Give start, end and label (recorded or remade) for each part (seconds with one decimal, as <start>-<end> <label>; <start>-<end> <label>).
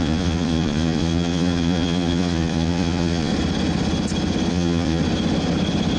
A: 0.0-3.3 remade; 3.3-4.5 recorded; 4.5-5.0 remade; 5.0-6.0 recorded